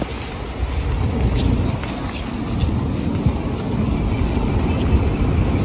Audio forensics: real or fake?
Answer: real